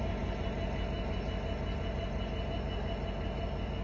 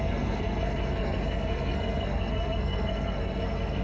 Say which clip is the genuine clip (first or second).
first